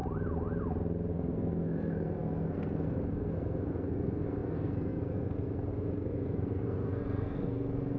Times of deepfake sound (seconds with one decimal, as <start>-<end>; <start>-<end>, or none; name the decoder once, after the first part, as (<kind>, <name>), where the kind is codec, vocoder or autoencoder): 1.1-8.0 (codec, SNAC)